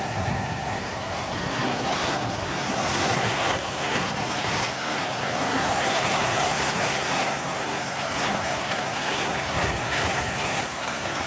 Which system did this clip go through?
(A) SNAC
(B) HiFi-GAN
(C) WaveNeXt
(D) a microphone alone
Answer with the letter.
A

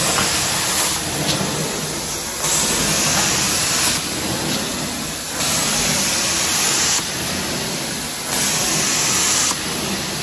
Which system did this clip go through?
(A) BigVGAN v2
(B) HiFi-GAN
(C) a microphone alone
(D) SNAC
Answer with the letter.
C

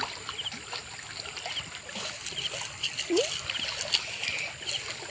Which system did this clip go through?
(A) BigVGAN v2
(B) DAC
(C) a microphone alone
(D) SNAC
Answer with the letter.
C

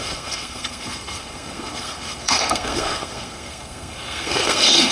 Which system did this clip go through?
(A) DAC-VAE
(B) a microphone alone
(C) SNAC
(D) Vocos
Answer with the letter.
C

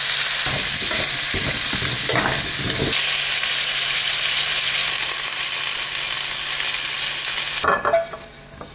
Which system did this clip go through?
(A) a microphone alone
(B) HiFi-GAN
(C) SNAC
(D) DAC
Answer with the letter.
A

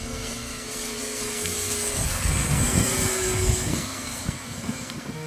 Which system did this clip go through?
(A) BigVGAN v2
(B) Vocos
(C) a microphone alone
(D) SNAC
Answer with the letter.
D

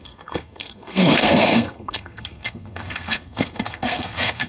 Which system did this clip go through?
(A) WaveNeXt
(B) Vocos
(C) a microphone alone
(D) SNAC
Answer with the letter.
D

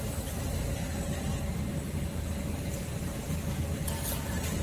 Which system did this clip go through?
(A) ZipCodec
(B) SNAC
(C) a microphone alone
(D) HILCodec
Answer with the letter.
C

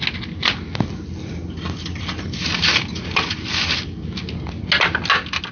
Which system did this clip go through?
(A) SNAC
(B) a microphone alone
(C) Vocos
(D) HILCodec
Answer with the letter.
B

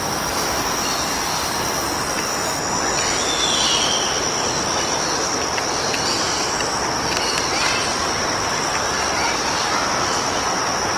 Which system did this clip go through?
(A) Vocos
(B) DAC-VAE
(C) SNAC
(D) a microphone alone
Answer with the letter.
D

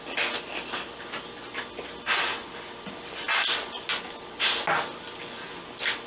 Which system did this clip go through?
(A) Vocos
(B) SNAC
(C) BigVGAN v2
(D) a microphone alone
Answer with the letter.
D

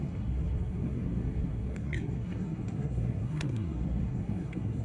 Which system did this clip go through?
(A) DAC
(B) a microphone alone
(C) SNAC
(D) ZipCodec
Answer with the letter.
C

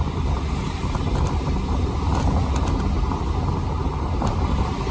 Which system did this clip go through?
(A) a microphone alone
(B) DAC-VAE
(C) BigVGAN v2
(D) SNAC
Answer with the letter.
A